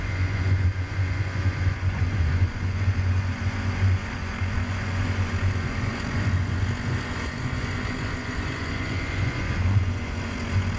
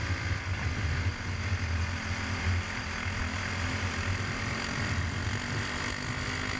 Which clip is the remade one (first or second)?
first